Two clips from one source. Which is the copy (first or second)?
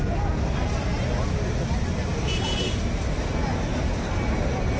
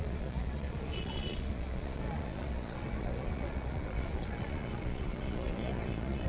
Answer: second